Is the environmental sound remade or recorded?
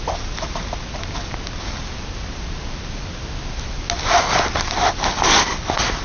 recorded